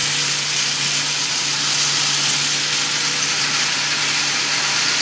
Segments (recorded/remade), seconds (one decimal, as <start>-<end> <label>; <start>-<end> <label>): 0.0-5.0 recorded